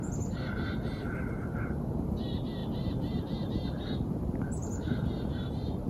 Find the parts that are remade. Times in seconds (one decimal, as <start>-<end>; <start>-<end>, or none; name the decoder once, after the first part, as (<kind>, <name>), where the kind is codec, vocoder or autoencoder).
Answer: 2.6-5.5 (vocoder, BigVGAN v2)